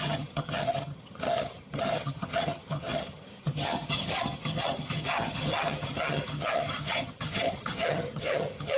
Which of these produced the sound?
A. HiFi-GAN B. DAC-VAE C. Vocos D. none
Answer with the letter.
A